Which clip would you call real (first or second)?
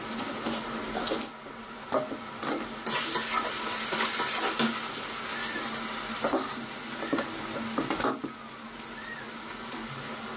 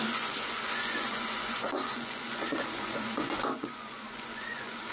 first